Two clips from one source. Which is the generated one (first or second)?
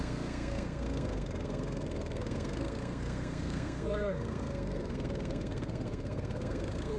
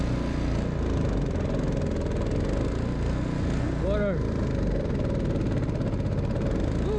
first